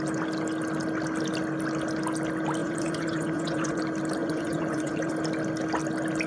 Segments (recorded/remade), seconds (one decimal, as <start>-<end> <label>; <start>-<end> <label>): 0.0-2.6 recorded; 2.6-3.8 remade; 3.8-4.2 recorded; 4.2-5.1 remade; 5.1-6.3 recorded